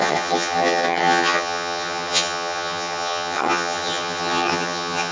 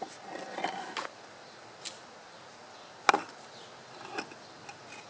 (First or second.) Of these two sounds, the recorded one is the second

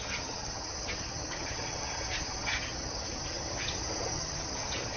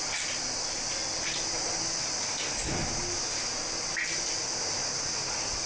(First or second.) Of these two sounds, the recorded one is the second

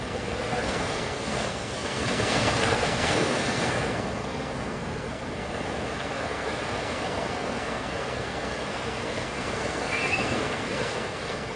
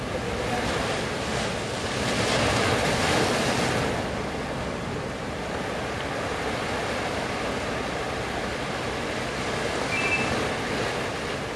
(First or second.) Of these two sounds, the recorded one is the second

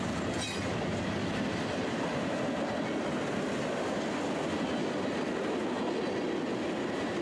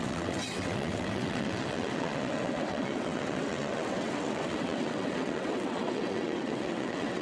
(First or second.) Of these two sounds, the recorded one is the first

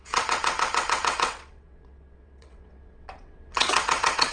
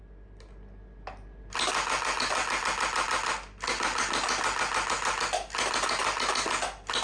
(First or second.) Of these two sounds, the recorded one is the second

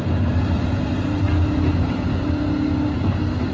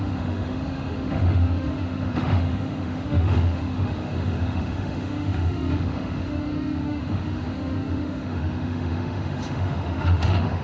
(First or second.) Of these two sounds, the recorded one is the first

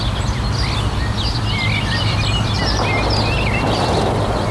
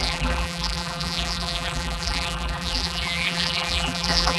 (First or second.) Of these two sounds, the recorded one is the first